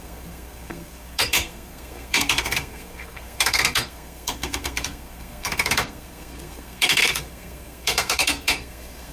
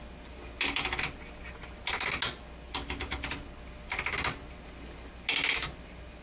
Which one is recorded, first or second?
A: second